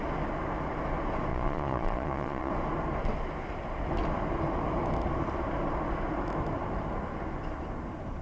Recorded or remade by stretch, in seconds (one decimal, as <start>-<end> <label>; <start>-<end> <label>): 0.0-1.3 recorded; 1.3-2.5 remade; 2.5-8.2 recorded